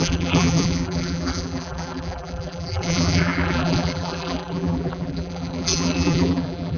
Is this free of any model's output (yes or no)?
no